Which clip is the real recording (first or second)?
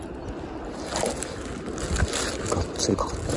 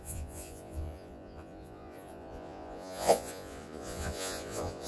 first